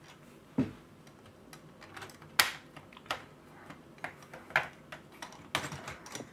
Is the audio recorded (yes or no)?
yes